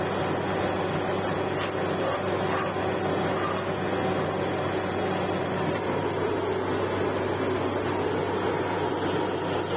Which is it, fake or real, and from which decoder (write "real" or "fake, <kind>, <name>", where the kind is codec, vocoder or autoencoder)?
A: real